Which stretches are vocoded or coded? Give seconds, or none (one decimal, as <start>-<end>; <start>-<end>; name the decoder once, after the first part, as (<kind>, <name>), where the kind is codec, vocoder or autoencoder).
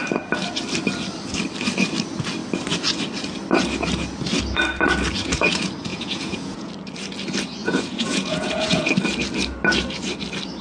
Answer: 5.9-6.7 (vocoder, Vocos); 7.6-8.9